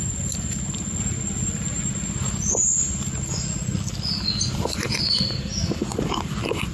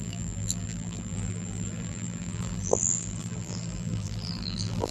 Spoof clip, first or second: second